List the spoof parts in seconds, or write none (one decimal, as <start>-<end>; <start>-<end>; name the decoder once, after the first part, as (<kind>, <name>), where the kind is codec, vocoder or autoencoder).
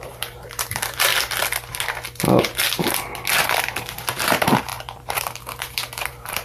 0.0-1.1 (vocoder, BigVGAN v2); 3.4-6.4